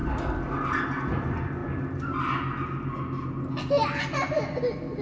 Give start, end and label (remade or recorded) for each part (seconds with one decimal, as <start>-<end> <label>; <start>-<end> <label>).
0.0-5.0 recorded